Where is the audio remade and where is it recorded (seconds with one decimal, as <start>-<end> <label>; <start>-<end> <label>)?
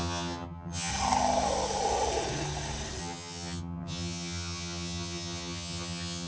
0.0-0.9 remade; 0.9-3.0 recorded; 3.0-6.3 remade